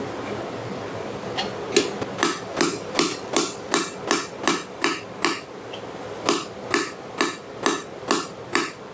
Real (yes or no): yes